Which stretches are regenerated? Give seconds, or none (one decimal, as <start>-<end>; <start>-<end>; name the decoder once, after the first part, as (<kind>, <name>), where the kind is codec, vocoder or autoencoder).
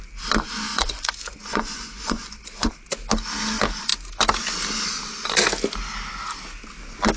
0.7-2.7 (vocoder, Vocos)